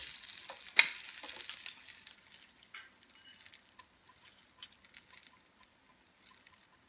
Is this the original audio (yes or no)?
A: yes